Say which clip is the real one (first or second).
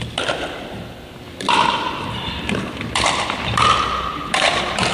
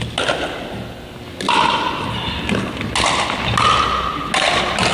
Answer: second